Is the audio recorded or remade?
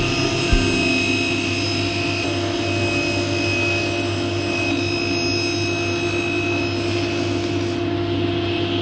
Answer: recorded